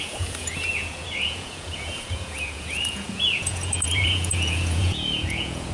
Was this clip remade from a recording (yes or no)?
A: yes